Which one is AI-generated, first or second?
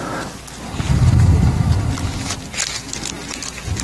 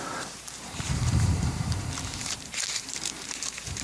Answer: second